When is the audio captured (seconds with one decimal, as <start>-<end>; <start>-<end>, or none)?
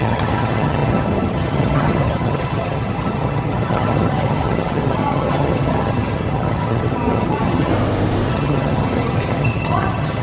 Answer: 7.7-8.3